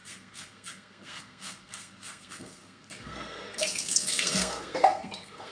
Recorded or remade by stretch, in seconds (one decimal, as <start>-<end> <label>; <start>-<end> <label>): 0.0-5.5 remade

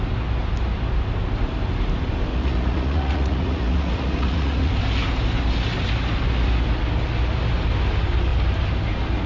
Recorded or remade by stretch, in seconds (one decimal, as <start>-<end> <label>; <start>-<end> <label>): 0.0-2.3 recorded; 2.3-4.7 remade; 4.7-9.3 recorded

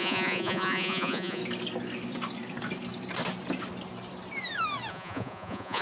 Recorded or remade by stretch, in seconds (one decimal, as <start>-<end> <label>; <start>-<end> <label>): 0.0-1.4 remade; 1.4-4.9 recorded; 4.9-5.8 remade

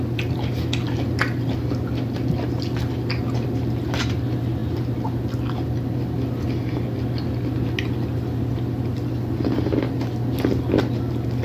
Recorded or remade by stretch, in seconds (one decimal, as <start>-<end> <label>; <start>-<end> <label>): 0.0-11.4 recorded

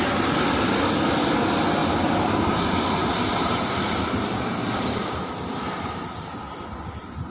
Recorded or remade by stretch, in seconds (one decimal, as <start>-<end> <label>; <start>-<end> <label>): 0.0-1.8 recorded; 1.8-5.4 remade; 5.4-7.3 recorded